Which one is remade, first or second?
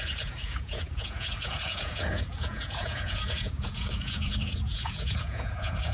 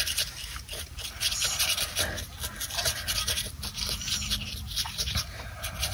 first